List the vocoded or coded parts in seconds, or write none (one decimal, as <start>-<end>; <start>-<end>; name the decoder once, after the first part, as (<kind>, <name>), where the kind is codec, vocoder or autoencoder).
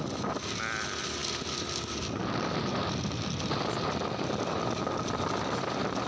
none